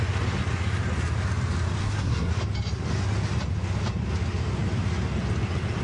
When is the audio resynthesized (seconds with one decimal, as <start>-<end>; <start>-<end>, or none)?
1.8-2.3